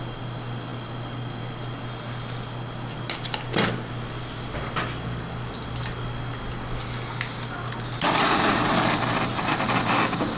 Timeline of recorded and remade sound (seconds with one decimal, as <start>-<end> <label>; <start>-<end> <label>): 0.0-8.2 recorded; 8.2-8.7 remade; 8.7-10.4 recorded